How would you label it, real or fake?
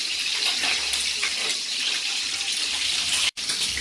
fake